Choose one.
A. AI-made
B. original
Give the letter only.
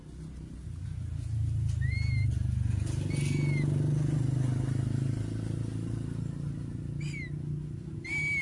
B